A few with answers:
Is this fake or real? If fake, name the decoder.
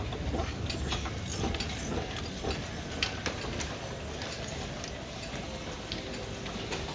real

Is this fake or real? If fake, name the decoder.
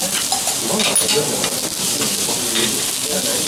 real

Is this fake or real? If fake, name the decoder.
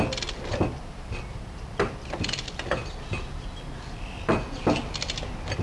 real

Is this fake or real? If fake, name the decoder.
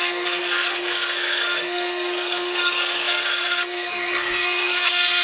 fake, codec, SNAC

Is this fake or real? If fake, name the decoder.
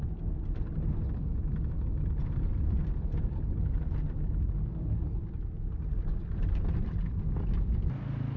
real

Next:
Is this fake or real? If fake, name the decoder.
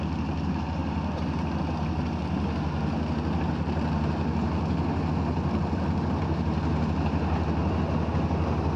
fake, vocoder, BigVGAN v2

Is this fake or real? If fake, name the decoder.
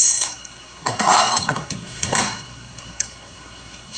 fake, codec, SNAC